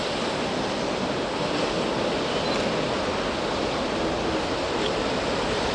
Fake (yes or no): no